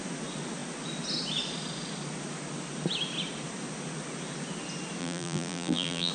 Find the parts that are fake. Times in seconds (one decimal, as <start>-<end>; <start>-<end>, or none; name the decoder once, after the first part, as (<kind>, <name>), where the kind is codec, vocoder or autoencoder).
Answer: 5.0-6.1 (vocoder, BigVGAN v2)